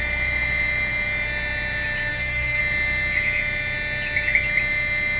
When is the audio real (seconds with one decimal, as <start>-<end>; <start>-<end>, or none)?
0.0-2.1; 2.6-5.2